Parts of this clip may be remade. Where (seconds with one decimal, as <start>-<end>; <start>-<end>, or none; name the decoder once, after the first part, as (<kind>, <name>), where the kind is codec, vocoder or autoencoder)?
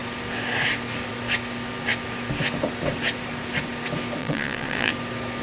4.2-4.9 (vocoder, Vocos)